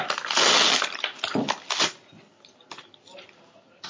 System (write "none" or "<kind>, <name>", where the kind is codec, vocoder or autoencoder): none